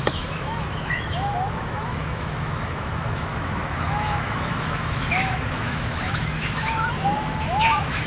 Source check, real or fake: fake